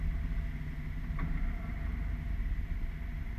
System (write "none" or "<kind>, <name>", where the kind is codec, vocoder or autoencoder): none